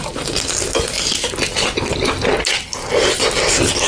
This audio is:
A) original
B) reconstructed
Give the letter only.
A